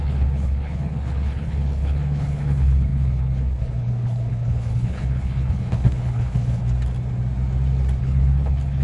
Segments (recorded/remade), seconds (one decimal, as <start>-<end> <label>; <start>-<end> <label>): 0.0-6.6 remade; 6.6-8.0 recorded; 8.0-8.8 remade